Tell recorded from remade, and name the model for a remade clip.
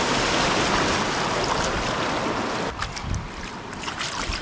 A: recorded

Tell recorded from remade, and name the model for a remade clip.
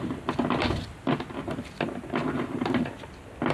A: recorded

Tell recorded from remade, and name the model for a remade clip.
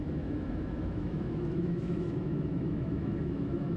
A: remade, autoencoder, DAC-VAE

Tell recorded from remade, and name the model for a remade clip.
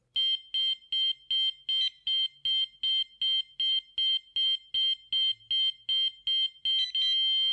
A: recorded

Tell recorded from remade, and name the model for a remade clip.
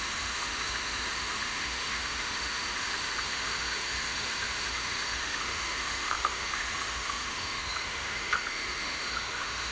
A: remade, autoencoder, DAC-VAE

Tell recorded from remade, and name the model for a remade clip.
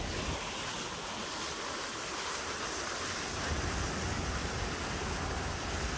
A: recorded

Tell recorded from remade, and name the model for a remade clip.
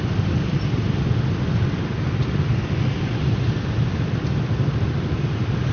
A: recorded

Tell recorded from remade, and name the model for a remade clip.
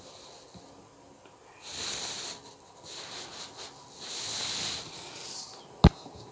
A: recorded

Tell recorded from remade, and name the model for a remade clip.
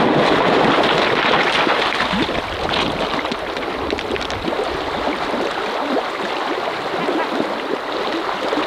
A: recorded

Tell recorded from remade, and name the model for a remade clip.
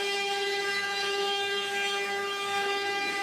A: remade, autoencoder, DAC-VAE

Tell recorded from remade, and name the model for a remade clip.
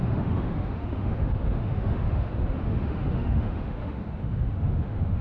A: remade, autoencoder, DAC-VAE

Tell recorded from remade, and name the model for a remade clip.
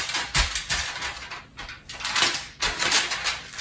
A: recorded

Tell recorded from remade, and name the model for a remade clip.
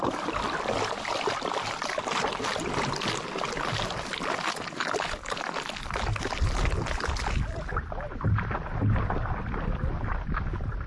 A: recorded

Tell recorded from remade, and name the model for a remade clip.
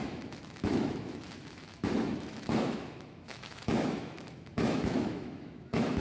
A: remade, autoencoder, DAC-VAE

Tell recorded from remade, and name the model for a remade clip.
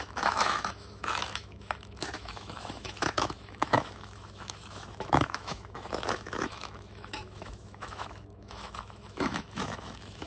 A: remade, autoencoder, DAC-VAE